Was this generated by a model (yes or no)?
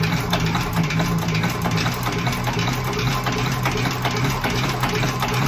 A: no